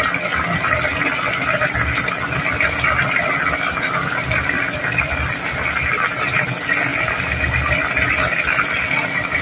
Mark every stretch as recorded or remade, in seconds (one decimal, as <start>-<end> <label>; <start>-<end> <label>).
0.0-9.4 recorded